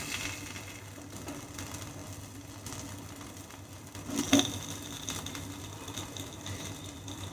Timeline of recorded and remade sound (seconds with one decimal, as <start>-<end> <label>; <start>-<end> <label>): 0.0-7.3 recorded